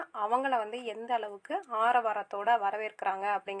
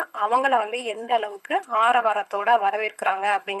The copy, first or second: second